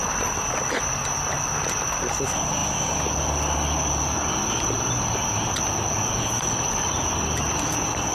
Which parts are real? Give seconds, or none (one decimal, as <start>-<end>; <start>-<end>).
0.0-8.1

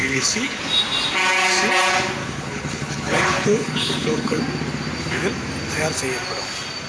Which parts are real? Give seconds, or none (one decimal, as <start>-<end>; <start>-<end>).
0.6-2.2; 4.4-6.9

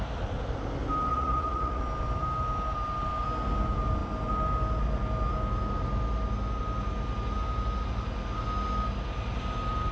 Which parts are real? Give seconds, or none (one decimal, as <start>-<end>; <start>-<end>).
0.0-1.1; 1.8-9.9